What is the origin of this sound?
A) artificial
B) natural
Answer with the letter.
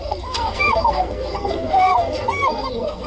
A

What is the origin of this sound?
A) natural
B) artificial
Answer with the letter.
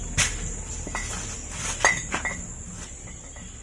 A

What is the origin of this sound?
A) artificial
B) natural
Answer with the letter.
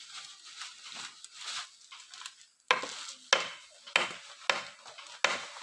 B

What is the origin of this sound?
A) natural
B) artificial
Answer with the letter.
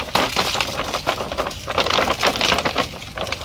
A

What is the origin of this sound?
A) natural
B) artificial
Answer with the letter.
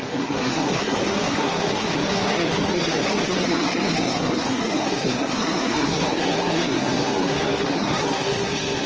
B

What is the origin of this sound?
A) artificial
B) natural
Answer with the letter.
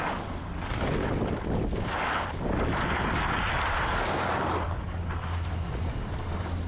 B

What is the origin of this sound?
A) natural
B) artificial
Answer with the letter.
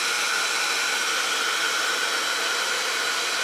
A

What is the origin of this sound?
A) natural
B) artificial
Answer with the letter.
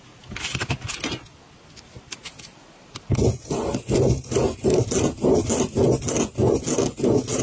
A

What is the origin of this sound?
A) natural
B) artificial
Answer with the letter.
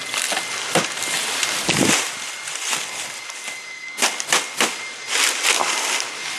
A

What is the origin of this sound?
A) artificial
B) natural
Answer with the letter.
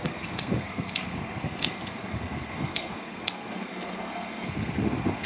A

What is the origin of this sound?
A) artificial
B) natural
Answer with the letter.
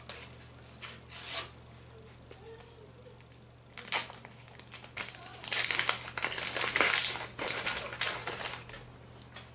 B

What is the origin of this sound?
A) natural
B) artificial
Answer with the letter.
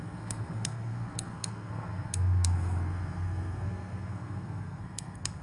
B